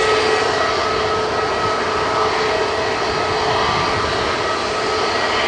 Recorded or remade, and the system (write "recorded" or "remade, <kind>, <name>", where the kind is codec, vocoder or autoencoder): recorded